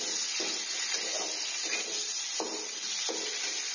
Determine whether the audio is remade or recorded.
recorded